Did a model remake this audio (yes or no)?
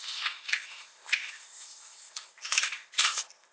yes